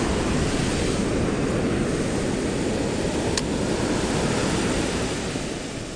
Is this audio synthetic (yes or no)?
no